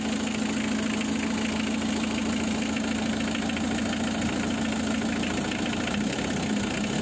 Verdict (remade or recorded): recorded